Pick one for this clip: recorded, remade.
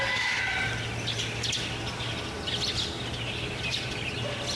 recorded